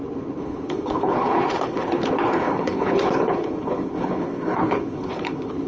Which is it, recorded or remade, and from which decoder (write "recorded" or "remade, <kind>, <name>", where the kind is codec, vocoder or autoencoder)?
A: remade, codec, HILCodec